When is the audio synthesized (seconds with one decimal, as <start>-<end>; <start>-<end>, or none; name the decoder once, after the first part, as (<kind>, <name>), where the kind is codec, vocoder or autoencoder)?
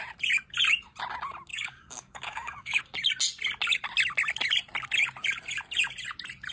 1.5-2.8 (codec, DAC)